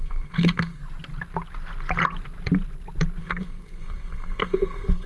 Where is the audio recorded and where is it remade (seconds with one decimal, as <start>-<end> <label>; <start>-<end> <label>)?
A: 0.0-0.8 remade; 0.8-3.2 recorded; 3.2-5.1 remade